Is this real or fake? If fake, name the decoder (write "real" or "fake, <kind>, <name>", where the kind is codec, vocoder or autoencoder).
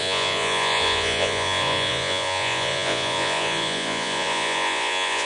fake, vocoder, Vocos